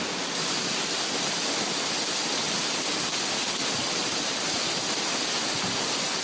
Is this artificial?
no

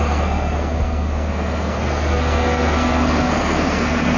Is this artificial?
yes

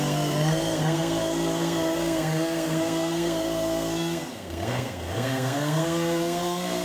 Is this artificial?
yes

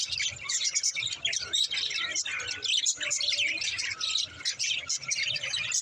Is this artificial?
no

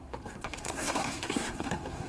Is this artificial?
yes